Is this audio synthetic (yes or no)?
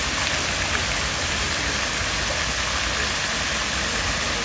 no